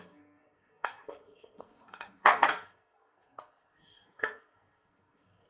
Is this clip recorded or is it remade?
remade